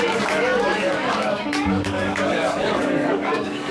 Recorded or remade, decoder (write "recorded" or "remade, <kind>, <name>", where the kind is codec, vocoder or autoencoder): remade, codec, DAC